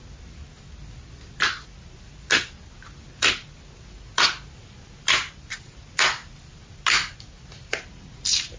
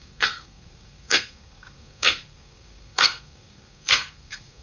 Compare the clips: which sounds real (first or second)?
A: first